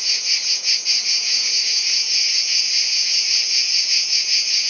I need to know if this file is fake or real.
fake